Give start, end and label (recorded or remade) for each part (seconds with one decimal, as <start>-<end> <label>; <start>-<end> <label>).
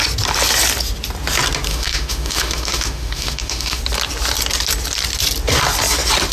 0.0-1.7 recorded; 1.7-3.8 remade; 3.8-6.3 recorded